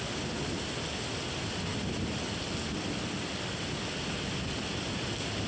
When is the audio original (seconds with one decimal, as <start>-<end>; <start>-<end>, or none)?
0.0-5.5